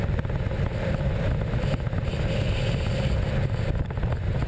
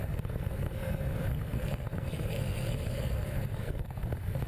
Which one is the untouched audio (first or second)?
first